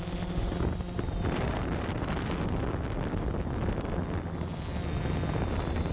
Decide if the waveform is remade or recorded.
recorded